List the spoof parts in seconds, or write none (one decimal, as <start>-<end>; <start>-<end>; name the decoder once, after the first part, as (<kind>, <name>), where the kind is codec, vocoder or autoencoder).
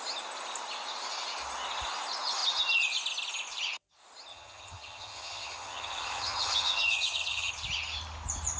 4.3-7.5 (vocoder, HiFi-GAN)